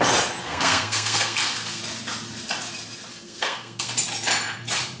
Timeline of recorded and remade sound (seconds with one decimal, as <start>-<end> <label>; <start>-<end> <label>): 0.0-0.4 recorded; 0.4-1.8 remade; 1.8-3.1 recorded; 3.1-3.9 remade; 3.9-5.0 recorded

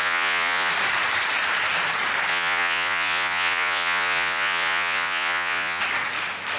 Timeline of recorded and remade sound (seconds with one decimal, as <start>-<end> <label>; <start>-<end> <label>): 0.0-0.7 remade; 0.7-2.3 recorded; 2.3-5.8 remade; 5.8-6.6 recorded

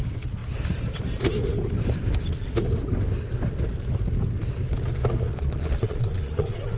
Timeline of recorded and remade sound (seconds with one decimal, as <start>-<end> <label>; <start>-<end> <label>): 0.0-5.3 recorded; 5.3-6.8 remade

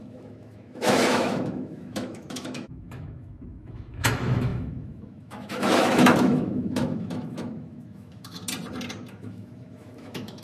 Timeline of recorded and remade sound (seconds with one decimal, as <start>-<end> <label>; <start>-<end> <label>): 0.0-8.4 remade; 8.4-9.1 recorded; 9.1-10.4 remade

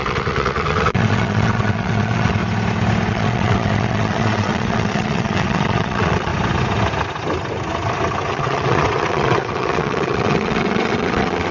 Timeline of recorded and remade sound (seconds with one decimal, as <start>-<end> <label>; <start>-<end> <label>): 0.0-2.4 remade; 2.4-3.1 recorded; 3.1-6.3 remade; 6.3-8.3 recorded; 8.3-11.5 remade

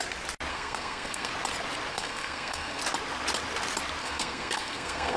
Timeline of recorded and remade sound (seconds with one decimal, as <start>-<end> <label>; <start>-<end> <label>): 0.0-0.5 recorded; 0.5-1.3 remade; 1.3-1.9 recorded; 1.9-2.8 remade; 2.8-4.0 recorded; 4.0-5.2 remade

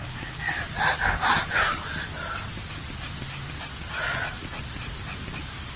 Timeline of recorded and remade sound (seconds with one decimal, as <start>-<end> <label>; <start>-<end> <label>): 0.0-4.0 recorded; 4.0-4.6 remade; 4.6-5.8 recorded

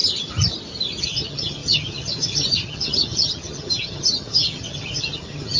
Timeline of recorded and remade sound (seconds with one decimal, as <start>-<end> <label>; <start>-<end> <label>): 0.0-1.0 recorded; 1.0-5.6 remade